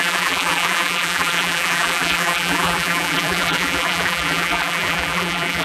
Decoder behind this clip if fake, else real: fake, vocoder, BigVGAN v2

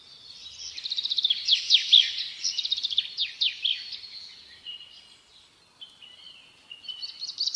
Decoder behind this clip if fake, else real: real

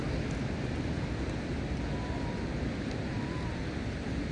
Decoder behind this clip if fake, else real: real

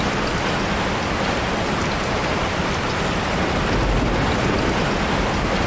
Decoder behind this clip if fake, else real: real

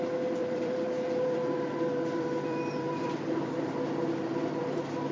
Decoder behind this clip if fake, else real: fake, vocoder, BigVGAN v2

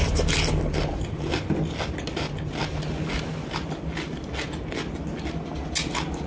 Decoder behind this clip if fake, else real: real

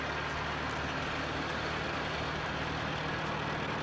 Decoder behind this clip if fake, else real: real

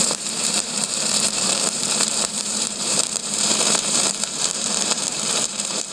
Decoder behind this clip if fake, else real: fake, vocoder, BigVGAN v2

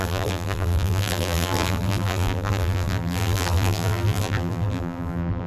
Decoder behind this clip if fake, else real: fake, vocoder, BigVGAN v2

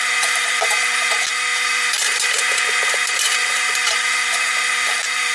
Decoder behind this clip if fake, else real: fake, vocoder, BigVGAN v2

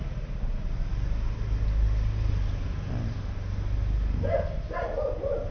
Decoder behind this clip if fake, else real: real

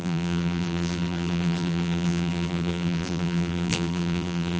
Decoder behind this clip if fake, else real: fake, vocoder, BigVGAN v2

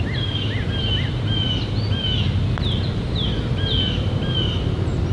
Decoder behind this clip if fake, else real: real